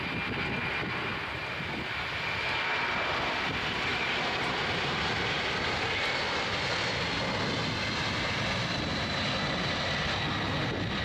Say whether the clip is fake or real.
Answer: real